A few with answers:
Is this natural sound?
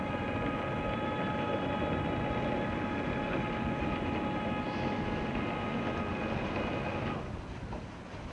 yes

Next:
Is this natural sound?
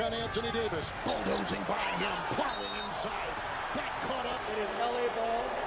yes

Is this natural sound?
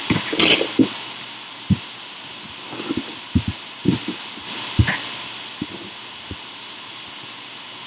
yes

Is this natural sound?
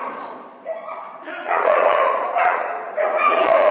no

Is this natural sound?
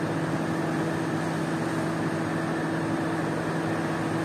yes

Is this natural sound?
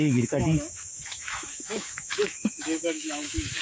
no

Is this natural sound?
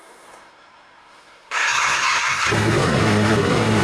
no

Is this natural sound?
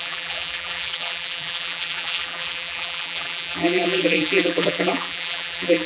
no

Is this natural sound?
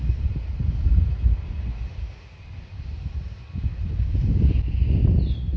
yes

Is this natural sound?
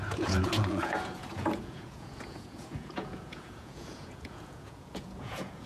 no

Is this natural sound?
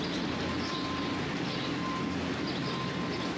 yes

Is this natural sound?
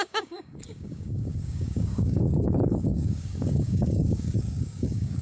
no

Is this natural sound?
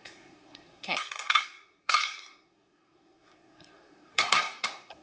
no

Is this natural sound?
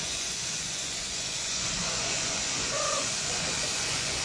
no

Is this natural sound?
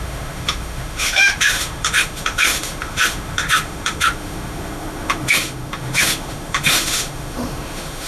no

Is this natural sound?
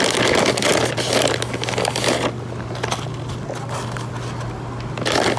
yes